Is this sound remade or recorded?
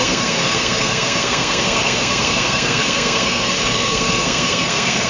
remade